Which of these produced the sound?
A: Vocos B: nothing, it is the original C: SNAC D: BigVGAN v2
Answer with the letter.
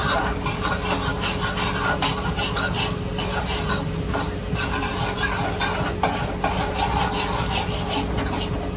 B